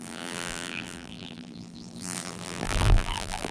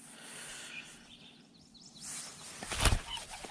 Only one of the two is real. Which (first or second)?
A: second